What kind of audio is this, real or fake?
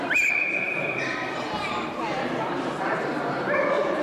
fake